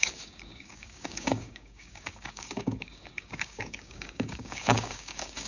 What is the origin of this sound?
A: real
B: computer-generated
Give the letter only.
B